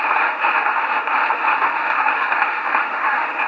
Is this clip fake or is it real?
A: fake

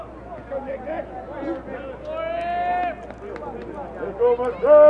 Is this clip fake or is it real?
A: real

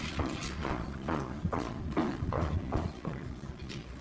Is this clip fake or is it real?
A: fake